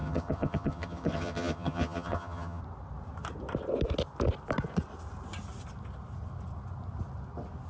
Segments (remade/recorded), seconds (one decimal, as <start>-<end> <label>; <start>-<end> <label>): 0.0-2.6 remade; 2.6-7.7 recorded